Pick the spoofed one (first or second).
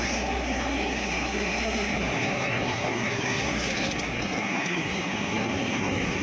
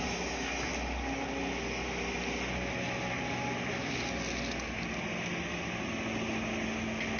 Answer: first